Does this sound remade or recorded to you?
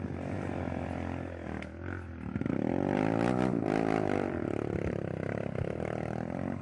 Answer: recorded